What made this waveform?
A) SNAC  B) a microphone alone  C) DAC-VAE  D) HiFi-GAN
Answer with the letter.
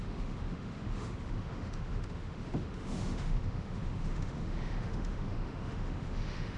C